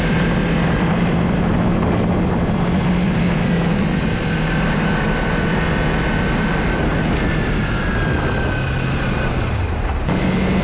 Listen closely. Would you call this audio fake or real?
real